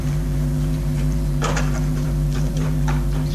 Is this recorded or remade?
remade